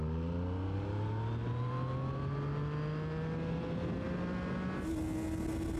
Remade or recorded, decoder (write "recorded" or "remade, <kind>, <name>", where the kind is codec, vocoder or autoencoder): recorded